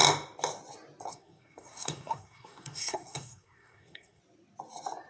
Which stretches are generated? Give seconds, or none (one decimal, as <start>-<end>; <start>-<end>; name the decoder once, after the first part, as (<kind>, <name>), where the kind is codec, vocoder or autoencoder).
1.1-4.2 (codec, SNAC)